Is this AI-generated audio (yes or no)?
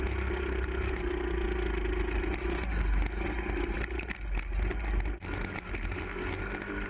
no